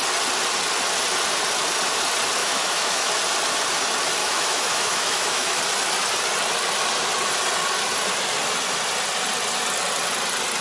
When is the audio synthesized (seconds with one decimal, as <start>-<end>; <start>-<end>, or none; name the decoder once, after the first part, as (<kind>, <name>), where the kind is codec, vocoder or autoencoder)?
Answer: 2.4-3.1 (autoencoder, DAC-VAE); 4.2-5.6